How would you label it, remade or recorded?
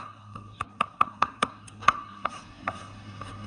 remade